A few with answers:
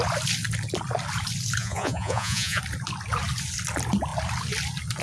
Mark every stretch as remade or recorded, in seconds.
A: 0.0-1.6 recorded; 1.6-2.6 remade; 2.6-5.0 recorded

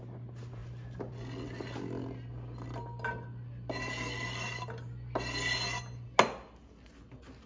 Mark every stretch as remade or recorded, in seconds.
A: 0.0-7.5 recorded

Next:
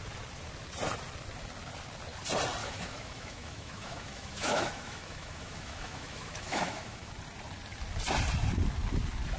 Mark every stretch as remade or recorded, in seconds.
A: 0.0-2.6 recorded; 2.6-7.1 remade; 7.1-9.4 recorded

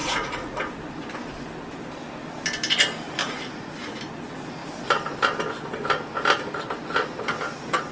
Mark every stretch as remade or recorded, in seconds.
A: 0.0-0.6 remade; 0.6-3.2 recorded; 3.2-4.0 remade; 4.0-7.9 recorded

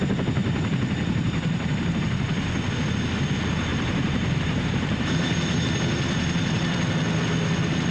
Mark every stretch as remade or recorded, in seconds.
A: 0.0-0.4 recorded; 0.4-2.0 remade; 2.0-3.7 recorded; 3.7-5.7 remade; 5.7-7.9 recorded

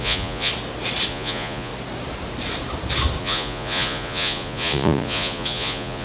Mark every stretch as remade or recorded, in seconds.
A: 0.0-0.5 remade; 0.5-1.1 recorded; 1.1-1.7 remade; 1.7-3.2 recorded; 3.2-6.0 remade